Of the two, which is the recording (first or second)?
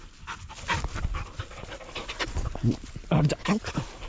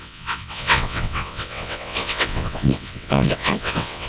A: first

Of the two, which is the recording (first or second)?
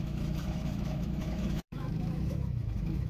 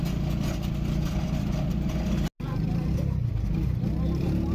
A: second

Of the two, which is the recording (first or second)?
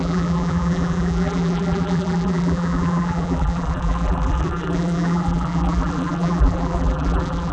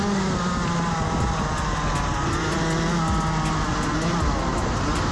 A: second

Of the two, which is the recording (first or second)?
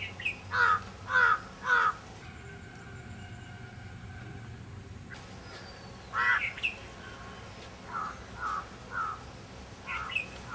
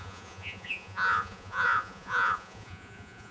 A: first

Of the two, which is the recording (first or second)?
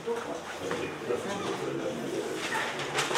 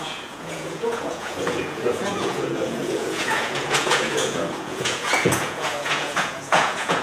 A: first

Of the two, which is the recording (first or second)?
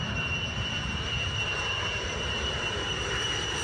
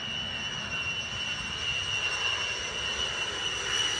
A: second